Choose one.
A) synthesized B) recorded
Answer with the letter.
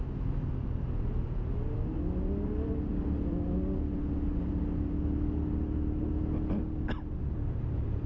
B